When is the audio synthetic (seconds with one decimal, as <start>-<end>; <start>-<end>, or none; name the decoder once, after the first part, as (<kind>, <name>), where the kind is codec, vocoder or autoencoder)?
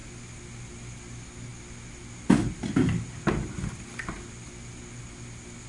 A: none